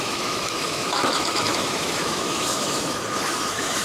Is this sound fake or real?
fake